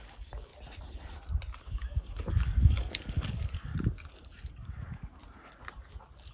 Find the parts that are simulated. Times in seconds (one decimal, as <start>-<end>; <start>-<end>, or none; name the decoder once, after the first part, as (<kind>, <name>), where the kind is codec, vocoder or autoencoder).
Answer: 0.0-0.5 (codec, DAC); 1.6-3.7; 4.5-5.2